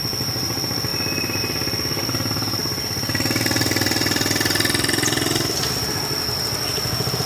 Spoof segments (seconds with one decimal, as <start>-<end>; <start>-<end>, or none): none